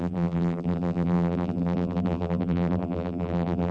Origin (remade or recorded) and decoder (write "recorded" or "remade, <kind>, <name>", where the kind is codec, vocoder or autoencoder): remade, vocoder, BigVGAN v2